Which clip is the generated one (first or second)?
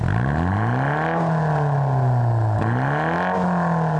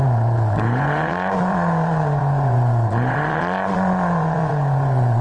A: second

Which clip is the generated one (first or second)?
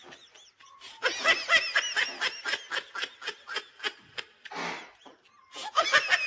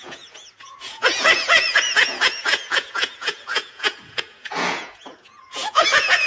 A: second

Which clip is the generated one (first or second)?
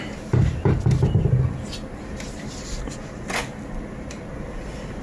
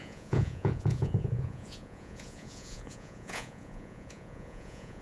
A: second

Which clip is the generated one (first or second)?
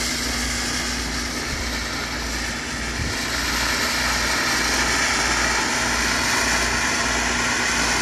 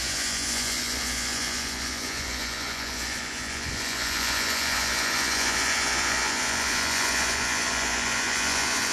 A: second